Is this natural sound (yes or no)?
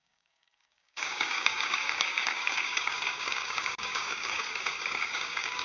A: no